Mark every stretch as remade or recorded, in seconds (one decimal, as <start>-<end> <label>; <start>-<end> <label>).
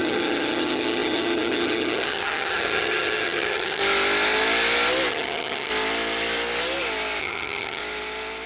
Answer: 0.0-3.8 remade; 3.8-5.1 recorded; 5.1-5.7 remade; 5.7-7.2 recorded; 7.2-7.8 remade; 7.8-8.5 recorded